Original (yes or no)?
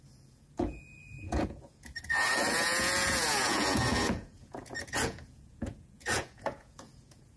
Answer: no